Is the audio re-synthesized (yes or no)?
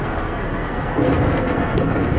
yes